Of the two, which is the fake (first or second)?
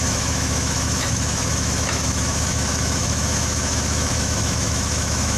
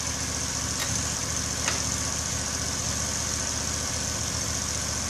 first